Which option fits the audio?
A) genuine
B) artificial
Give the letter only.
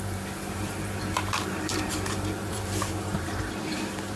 B